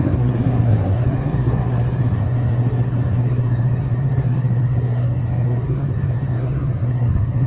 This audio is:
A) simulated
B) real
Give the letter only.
A